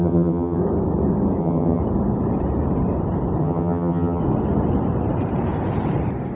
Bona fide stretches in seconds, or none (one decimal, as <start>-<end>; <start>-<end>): 0.6-1.4; 1.8-3.4; 4.2-6.4